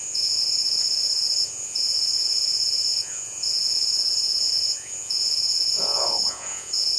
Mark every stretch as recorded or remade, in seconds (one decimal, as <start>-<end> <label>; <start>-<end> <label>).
0.0-7.0 remade